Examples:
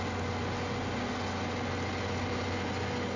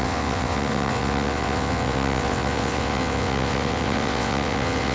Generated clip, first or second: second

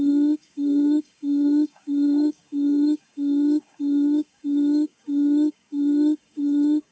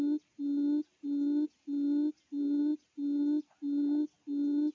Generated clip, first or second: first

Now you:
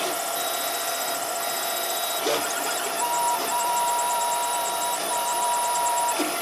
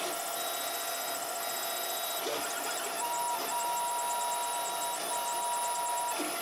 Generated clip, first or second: first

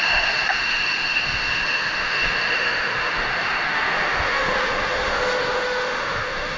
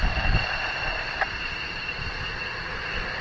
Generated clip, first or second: first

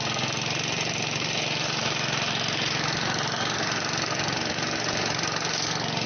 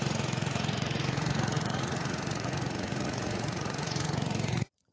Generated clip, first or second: second